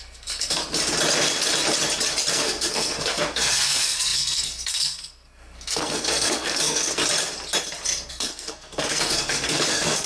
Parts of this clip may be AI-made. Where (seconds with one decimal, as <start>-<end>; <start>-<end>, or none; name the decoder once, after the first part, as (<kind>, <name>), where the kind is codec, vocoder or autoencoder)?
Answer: 0.0-0.6 (codec, SNAC); 2.3-7.0; 8.1-10.1